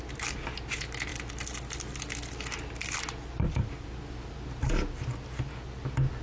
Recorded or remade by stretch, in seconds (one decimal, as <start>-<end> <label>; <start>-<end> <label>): 0.0-6.2 recorded